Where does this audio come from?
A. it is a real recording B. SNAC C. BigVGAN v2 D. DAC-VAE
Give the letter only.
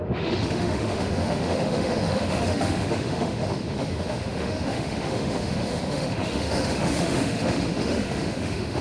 D